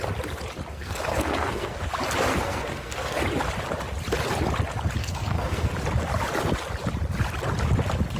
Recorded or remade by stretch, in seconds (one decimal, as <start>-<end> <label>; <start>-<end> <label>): 0.0-0.7 recorded; 0.7-1.8 remade; 1.8-2.3 recorded; 2.3-3.2 remade; 3.2-5.0 recorded; 5.0-5.7 remade; 5.7-8.2 recorded